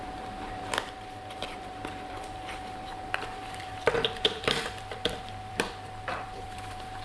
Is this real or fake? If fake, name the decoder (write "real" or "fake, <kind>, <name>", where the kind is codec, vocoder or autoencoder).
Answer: fake, vocoder, BigVGAN v2